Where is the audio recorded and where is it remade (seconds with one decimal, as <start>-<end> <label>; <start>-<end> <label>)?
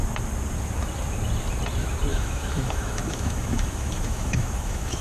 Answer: 0.0-2.1 recorded; 2.1-5.0 remade